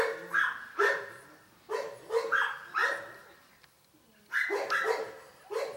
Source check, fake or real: real